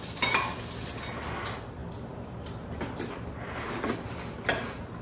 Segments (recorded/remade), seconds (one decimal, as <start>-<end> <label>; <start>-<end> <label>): 0.0-5.0 recorded